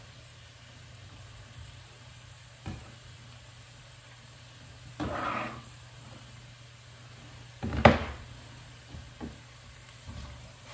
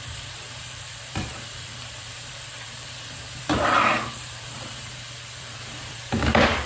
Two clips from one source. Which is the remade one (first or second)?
second